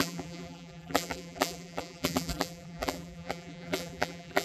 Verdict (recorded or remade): remade